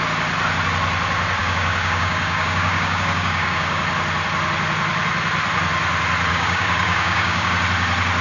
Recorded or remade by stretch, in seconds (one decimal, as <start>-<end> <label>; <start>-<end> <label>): 0.0-1.4 recorded; 1.4-3.8 remade; 3.8-6.3 recorded; 6.3-7.5 remade; 7.5-8.2 recorded